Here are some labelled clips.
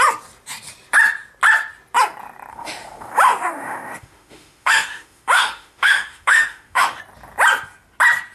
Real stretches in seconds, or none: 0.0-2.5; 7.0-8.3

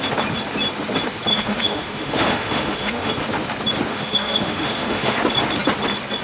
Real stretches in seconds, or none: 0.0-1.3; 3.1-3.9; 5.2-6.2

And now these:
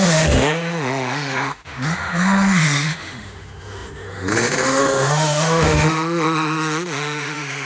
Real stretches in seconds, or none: none